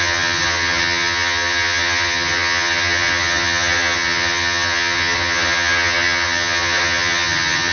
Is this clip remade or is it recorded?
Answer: remade